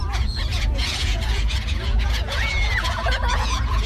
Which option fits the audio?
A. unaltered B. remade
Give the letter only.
B